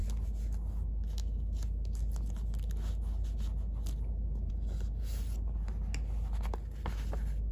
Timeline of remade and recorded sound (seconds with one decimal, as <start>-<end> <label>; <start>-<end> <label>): 0.0-7.5 recorded

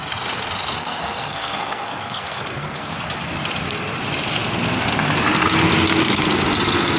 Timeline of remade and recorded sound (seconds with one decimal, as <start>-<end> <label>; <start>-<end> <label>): 0.0-0.8 recorded; 0.8-3.0 remade; 3.0-7.0 recorded